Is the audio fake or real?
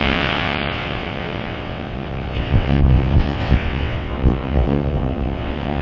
fake